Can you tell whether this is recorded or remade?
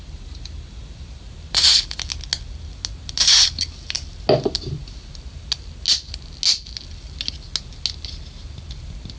recorded